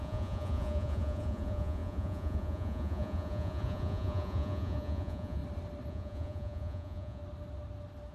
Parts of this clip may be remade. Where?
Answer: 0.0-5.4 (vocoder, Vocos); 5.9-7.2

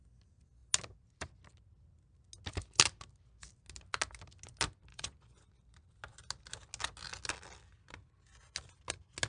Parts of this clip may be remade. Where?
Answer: 4.9-5.5 (vocoder, Vocos)

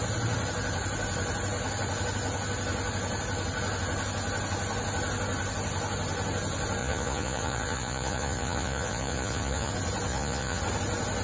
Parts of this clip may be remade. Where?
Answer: 6.8-9.7 (vocoder, Vocos); 10.1-10.6

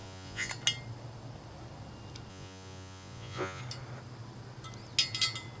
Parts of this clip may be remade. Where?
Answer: 0.0-0.5 (vocoder, Vocos); 2.3-3.6

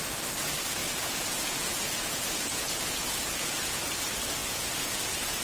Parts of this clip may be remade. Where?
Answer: 0.8-4.0 (vocoder, Vocos); 4.4-5.4

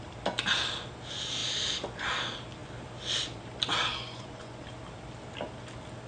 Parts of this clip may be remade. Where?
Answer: 3.9-4.6 (vocoder, Vocos)

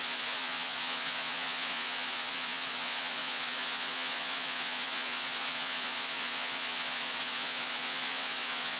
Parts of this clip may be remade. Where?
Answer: 0.0-8.8 (vocoder, Vocos)